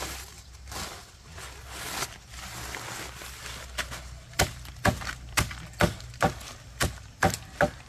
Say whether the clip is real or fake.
real